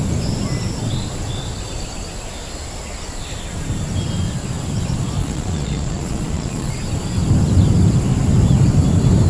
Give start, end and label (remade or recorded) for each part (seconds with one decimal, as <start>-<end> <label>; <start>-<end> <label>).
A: 0.0-5.2 recorded; 5.2-6.7 remade; 6.7-9.3 recorded